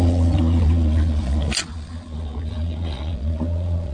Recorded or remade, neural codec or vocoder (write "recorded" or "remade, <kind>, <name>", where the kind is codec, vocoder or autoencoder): remade, vocoder, Vocos